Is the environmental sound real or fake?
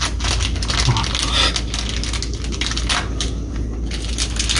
real